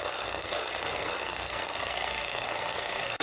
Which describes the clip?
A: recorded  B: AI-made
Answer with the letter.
B